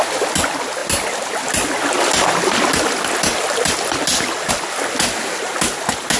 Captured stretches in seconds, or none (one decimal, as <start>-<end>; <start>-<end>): 0.0-6.2